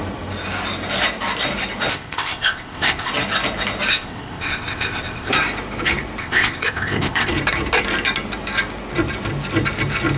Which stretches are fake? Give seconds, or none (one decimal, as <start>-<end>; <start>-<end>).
1.9-3.1; 3.9-5.3; 6.2-7.3